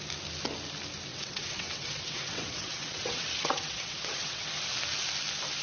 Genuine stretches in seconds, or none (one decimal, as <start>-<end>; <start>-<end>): 0.0-1.1; 4.5-5.6